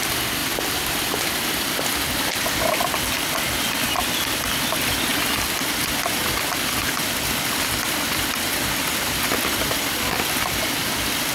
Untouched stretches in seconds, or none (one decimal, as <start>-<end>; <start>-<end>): 0.0-0.4; 1.9-5.1; 6.0-9.5; 10.7-11.3